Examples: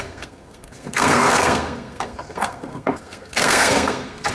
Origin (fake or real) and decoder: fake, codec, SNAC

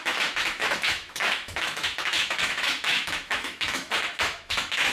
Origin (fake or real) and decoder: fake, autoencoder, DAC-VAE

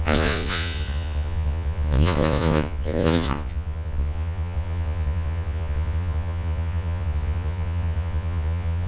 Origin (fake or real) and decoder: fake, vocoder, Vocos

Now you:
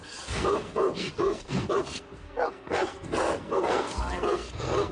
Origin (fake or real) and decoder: fake, codec, SNAC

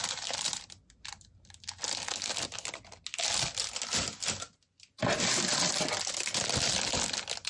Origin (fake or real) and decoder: real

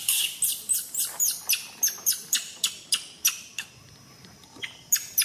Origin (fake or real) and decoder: fake, vocoder, BigVGAN v2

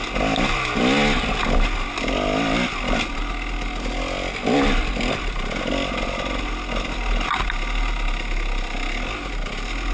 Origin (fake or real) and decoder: real